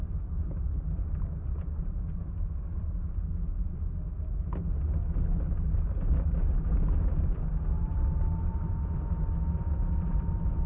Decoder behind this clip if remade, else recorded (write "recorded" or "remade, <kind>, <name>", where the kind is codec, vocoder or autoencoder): recorded